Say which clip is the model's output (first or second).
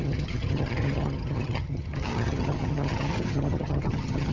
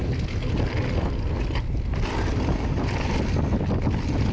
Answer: first